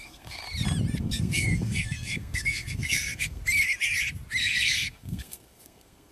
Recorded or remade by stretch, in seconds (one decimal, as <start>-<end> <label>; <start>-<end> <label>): 0.0-0.4 remade; 0.4-1.0 recorded; 1.0-3.4 remade; 3.4-4.4 recorded; 4.4-6.1 remade